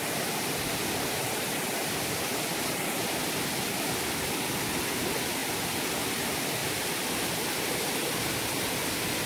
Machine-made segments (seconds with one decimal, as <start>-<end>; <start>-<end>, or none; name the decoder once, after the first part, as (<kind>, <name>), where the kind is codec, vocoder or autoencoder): 6.6-7.3 (vocoder, BigVGAN v2)